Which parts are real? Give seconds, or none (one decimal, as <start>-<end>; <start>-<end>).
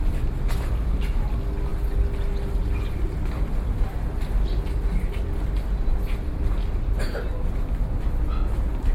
0.0-8.9